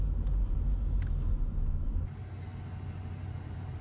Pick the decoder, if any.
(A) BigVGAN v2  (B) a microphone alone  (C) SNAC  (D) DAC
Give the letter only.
B